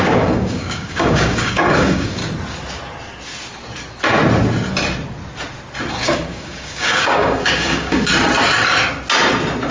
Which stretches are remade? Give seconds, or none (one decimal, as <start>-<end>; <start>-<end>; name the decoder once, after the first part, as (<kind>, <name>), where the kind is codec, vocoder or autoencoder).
0.0-2.2 (codec, DAC); 5.9-8.1